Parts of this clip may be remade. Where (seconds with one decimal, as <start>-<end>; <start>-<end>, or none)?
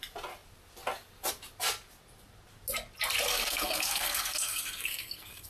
3.3-5.5